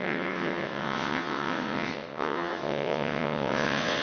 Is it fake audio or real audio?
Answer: fake